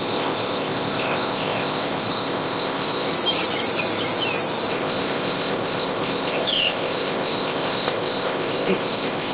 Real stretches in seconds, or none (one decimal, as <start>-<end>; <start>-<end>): 3.1-4.7